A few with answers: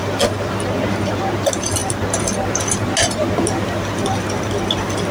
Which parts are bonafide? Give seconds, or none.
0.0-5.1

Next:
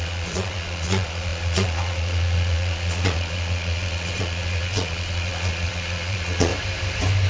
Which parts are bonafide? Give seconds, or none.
6.5-7.3

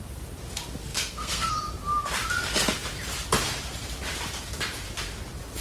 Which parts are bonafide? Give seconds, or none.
0.0-0.9; 1.5-5.6

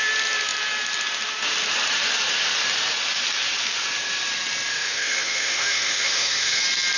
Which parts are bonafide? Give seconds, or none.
0.0-4.7; 6.6-7.0

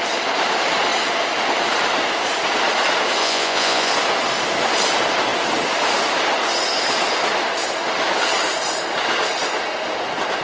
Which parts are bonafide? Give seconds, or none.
0.0-3.2; 3.9-10.4

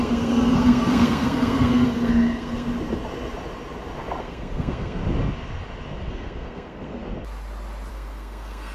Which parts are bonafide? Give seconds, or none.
2.7-4.2; 5.0-6.1; 7.0-7.9

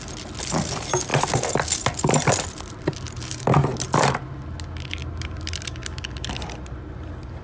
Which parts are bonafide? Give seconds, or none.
0.0-1.1; 4.1-7.4

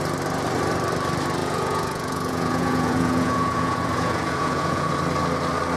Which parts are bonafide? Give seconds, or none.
0.0-1.4; 4.9-5.8